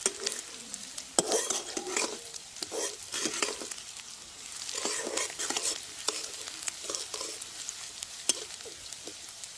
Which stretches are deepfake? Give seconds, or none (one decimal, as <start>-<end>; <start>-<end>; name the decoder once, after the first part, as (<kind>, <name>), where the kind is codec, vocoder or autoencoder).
none